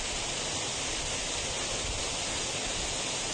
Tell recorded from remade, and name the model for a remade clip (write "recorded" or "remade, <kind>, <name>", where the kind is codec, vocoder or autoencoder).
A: recorded